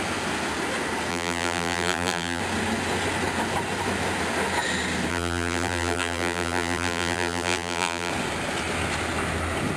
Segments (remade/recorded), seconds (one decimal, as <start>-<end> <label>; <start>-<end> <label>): 0.0-1.1 recorded; 1.1-2.4 remade; 2.4-5.1 recorded; 5.1-8.1 remade; 8.1-9.8 recorded